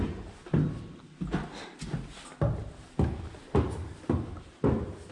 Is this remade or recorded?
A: recorded